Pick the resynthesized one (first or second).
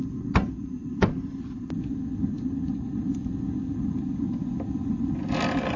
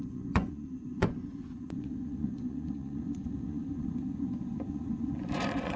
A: second